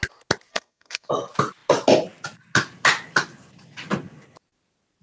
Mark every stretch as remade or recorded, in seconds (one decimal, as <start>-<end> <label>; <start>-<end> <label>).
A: 0.0-0.5 recorded; 0.5-1.1 remade; 1.1-5.0 recorded